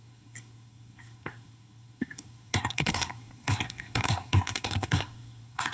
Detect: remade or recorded remade